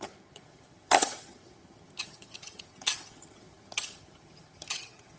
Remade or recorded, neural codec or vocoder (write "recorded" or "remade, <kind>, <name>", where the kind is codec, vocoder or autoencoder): remade, vocoder, HiFi-GAN